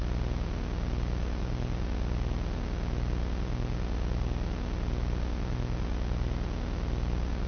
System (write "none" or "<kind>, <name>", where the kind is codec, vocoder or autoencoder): none